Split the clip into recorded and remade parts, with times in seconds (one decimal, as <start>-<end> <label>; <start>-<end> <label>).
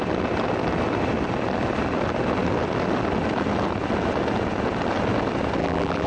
0.0-5.6 recorded; 5.6-6.1 remade